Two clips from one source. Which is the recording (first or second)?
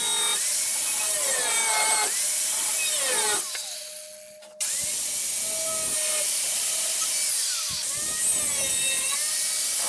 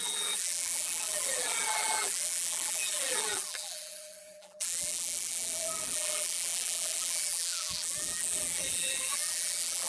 first